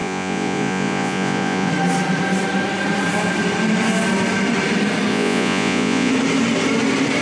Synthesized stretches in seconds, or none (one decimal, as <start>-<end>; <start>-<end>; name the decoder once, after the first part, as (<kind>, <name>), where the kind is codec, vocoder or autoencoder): 0.0-1.7 (vocoder, Vocos); 5.1-6.1